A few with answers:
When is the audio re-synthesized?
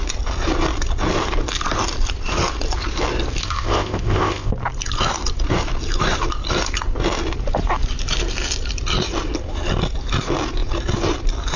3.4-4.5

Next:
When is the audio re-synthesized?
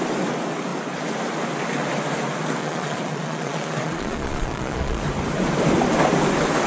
2.6-5.0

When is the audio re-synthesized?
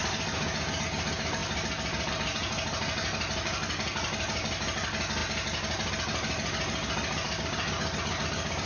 0.0-0.8; 1.4-2.1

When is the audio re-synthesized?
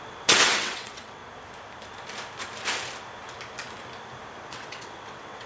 0.0-1.2; 4.5-5.5